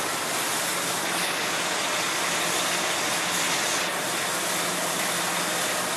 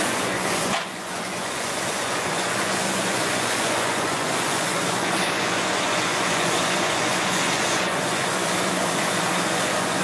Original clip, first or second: first